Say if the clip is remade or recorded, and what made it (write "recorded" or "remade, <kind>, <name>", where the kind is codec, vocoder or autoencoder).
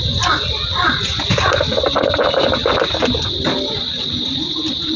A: recorded